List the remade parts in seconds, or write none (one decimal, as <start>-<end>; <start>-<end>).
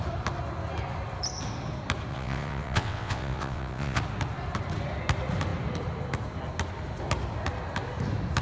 2.1-4.0